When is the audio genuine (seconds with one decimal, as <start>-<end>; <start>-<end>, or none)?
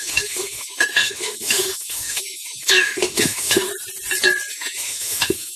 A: 3.7-4.5